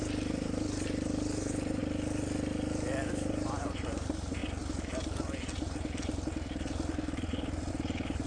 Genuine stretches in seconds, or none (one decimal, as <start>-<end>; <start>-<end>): 1.8-3.1; 4.4-7.7